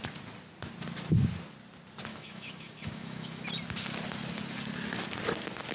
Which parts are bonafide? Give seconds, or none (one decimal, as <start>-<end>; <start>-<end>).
0.0-2.1; 3.4-5.7